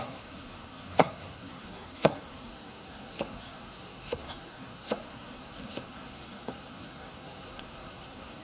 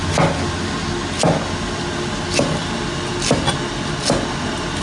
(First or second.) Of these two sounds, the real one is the second